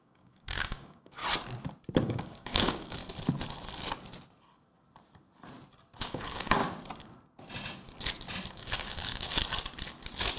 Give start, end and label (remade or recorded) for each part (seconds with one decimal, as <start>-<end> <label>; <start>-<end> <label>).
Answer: 0.0-1.2 remade; 1.2-2.0 recorded; 2.0-3.0 remade; 3.0-6.0 recorded; 6.0-6.6 remade; 6.6-8.5 recorded; 8.5-9.4 remade; 9.4-10.4 recorded